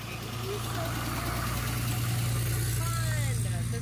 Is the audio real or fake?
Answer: real